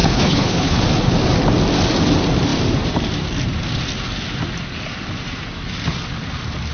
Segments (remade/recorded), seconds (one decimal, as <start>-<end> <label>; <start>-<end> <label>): 0.0-0.8 remade; 0.8-6.7 recorded